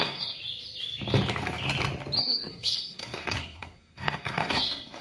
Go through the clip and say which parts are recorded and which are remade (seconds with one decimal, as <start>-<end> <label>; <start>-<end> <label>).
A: 0.0-0.4 remade; 0.4-2.2 recorded; 2.2-5.0 remade